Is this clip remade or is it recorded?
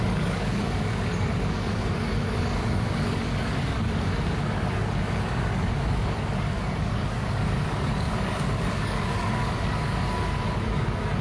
remade